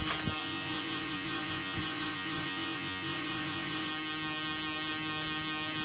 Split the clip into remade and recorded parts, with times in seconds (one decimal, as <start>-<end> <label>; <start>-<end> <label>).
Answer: 0.0-0.4 recorded; 0.4-3.9 remade; 3.9-5.8 recorded